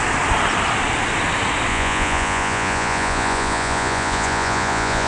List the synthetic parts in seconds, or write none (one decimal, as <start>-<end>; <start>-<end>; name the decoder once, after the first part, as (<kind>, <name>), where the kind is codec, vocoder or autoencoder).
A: 1.7-5.1 (vocoder, Vocos)